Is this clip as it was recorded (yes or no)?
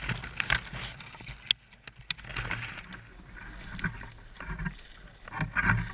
yes